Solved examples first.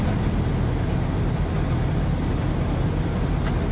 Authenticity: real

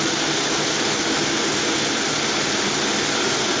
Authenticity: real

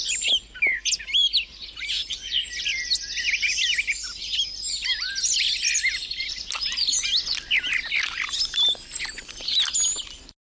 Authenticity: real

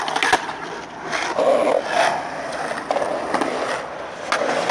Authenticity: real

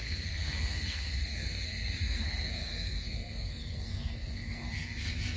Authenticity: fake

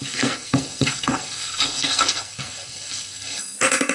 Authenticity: fake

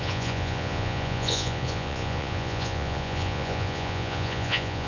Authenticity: fake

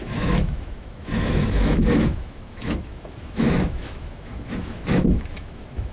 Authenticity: fake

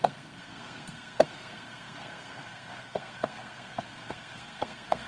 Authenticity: fake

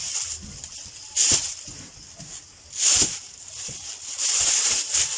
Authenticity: real